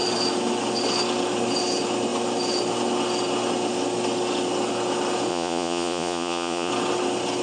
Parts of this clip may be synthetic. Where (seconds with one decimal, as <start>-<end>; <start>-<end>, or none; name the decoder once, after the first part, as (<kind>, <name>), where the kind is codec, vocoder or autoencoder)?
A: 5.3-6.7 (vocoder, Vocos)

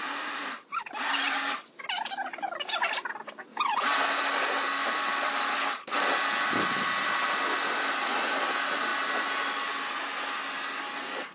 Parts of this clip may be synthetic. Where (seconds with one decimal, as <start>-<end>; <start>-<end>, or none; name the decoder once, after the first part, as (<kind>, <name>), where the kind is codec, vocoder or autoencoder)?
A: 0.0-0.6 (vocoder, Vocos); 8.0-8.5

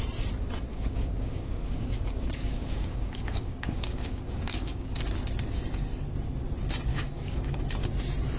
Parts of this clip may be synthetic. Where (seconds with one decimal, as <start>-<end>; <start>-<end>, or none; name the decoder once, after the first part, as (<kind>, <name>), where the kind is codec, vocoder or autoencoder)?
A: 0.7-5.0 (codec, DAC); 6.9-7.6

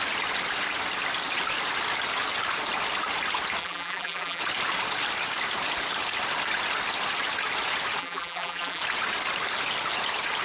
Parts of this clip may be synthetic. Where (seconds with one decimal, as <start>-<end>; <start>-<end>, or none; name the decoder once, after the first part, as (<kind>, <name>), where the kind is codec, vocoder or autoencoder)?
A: 3.6-4.4 (vocoder, BigVGAN v2); 8.0-8.8